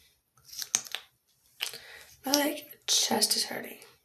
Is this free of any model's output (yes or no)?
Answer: yes